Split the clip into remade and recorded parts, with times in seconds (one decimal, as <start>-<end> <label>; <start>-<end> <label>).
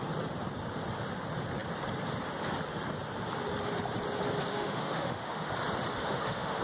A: 0.0-4.5 recorded; 4.5-5.5 remade; 5.5-5.9 recorded; 5.9-6.6 remade